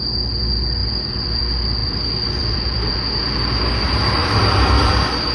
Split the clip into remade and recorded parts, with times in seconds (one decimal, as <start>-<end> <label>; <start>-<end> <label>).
0.0-0.8 recorded; 0.8-1.4 remade; 1.4-1.8 recorded; 1.8-2.9 remade; 2.9-4.2 recorded; 4.2-5.3 remade